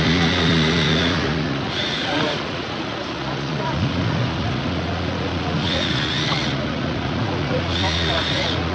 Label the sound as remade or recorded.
remade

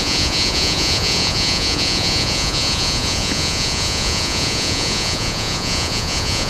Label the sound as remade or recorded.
remade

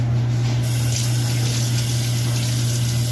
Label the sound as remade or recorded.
recorded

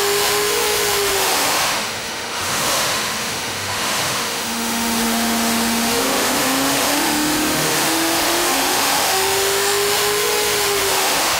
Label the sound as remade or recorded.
remade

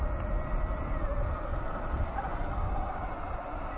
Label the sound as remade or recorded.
recorded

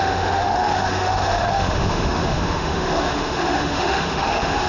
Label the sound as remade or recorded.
remade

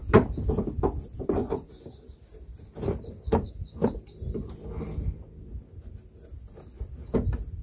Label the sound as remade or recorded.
recorded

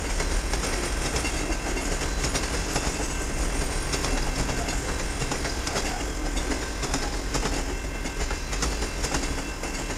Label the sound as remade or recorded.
recorded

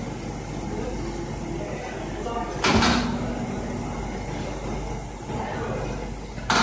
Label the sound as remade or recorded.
recorded